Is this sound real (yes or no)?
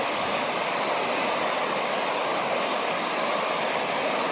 yes